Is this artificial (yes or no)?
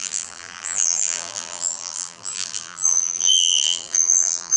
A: yes